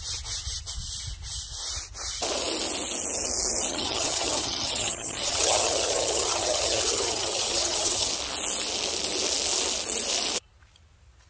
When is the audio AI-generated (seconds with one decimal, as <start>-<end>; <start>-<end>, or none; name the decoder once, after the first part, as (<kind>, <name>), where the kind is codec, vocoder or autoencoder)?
3.7-8.1 (vocoder, HiFi-GAN)